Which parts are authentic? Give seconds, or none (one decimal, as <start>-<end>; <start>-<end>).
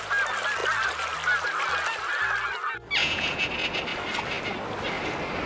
0.0-3.0; 3.5-5.5